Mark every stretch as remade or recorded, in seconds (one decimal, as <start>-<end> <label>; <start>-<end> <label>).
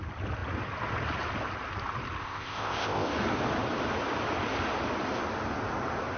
0.0-2.2 recorded; 2.2-3.1 remade; 3.1-6.2 recorded